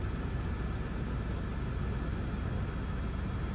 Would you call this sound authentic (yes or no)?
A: yes